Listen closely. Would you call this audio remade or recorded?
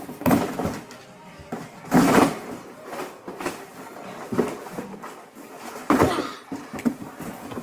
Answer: remade